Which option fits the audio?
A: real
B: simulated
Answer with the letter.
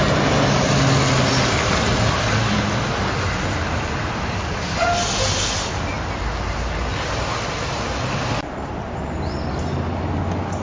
A